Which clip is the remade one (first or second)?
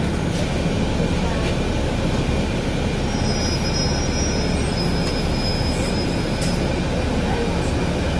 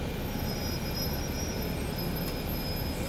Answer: second